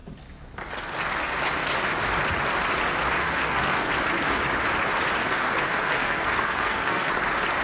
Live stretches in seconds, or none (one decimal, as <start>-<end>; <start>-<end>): 0.0-3.2; 3.9-5.2; 7.1-7.6